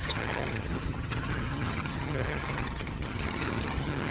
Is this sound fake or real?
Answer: fake